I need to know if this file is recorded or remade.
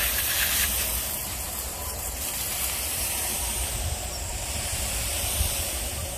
remade